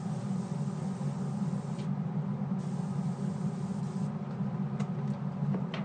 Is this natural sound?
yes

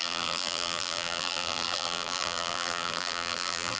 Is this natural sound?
no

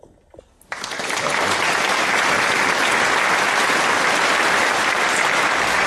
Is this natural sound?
yes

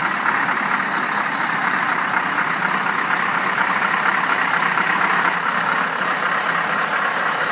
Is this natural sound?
yes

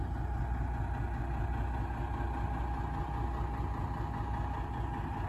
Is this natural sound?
yes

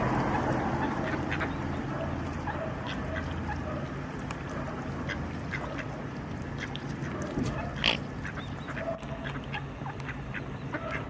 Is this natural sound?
yes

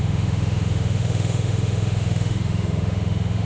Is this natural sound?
no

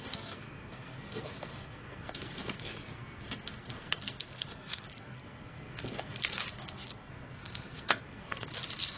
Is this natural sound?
no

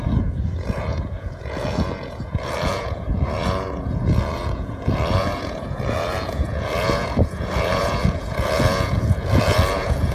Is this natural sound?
no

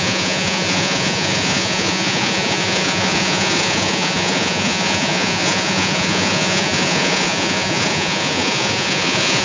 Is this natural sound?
no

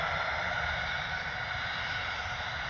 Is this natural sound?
yes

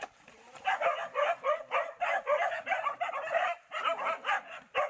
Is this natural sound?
yes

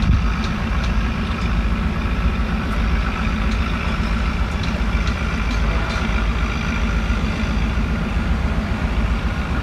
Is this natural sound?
no